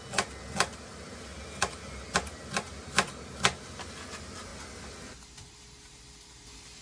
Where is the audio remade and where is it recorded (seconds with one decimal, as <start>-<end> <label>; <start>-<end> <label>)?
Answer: 0.0-6.8 recorded